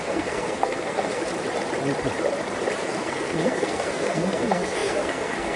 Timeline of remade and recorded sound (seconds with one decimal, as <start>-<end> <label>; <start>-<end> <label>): 0.0-1.3 remade; 1.3-2.8 recorded; 2.8-5.6 remade